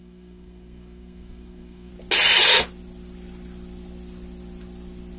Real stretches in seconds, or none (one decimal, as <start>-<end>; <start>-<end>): 1.9-5.2